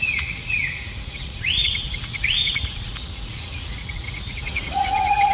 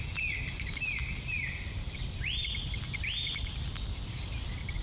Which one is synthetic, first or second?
first